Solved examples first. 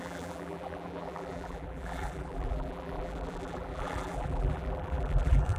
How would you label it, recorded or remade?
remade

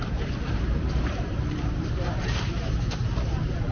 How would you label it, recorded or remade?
remade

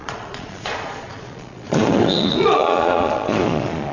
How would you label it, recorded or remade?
remade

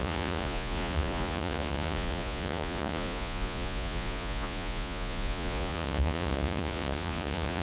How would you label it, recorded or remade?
remade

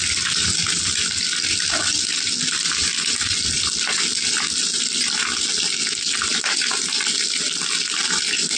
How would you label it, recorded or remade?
recorded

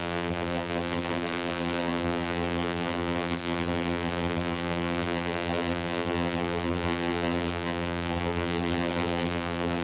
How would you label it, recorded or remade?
remade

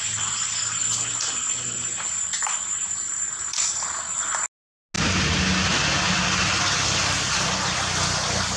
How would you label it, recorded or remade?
recorded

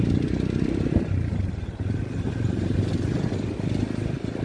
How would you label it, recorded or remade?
recorded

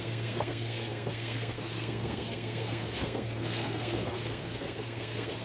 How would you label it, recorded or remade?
remade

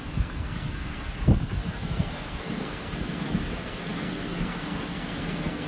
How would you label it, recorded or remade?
remade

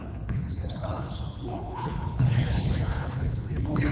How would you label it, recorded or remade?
remade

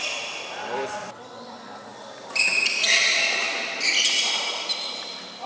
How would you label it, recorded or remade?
recorded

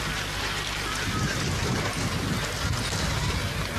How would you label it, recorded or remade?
recorded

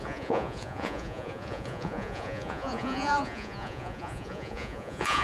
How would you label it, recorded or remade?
remade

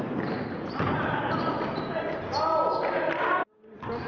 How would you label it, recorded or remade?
recorded